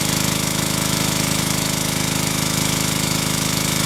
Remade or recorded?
remade